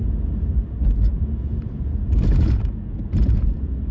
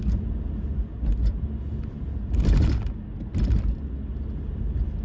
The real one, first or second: second